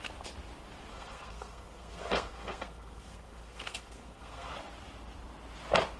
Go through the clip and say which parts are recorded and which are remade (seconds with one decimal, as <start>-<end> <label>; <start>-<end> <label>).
0.0-0.9 recorded; 0.9-4.5 remade; 4.5-6.0 recorded